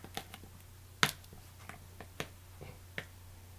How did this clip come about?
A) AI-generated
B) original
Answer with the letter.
B